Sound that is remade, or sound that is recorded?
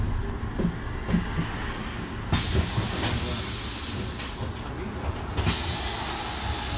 recorded